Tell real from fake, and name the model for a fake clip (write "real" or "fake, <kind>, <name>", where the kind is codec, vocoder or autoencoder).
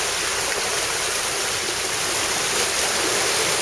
fake, vocoder, BigVGAN v2